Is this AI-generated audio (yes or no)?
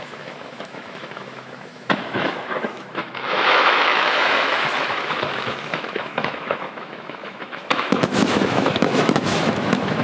yes